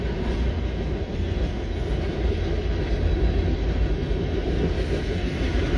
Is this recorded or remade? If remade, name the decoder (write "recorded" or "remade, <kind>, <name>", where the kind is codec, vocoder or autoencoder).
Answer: recorded